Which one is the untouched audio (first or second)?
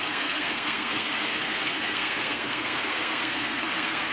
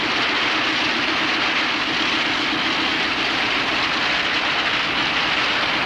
second